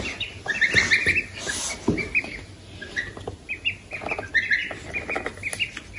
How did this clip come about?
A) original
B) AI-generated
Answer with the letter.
A